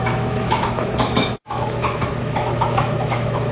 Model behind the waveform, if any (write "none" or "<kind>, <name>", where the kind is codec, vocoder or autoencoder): autoencoder, DAC-VAE